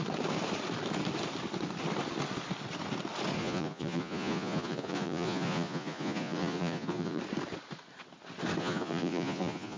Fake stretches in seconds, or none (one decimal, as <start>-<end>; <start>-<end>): 3.4-7.2; 8.6-9.8

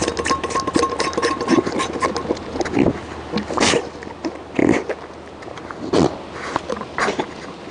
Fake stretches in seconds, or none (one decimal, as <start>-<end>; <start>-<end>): none

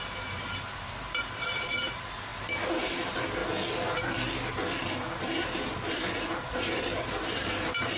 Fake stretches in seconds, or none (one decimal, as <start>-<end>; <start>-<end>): 0.0-3.4; 5.2-8.0

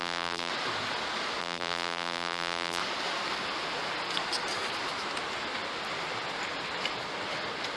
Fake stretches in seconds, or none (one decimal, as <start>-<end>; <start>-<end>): 0.0-0.5; 1.4-2.8

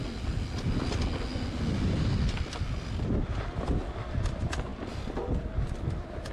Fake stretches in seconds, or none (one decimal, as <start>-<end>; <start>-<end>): 1.3-2.6

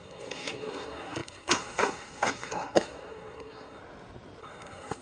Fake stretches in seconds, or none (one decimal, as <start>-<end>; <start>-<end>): 0.0-3.8; 4.4-5.0

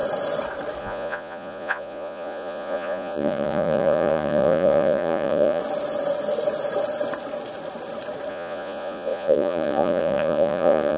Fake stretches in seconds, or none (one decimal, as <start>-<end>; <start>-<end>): 0.8-5.6; 8.3-11.0

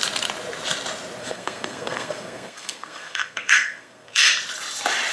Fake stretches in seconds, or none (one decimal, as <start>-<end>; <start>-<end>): 1.2-4.3